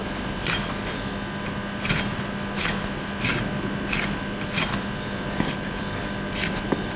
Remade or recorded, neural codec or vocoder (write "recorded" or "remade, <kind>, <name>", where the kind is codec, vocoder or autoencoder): recorded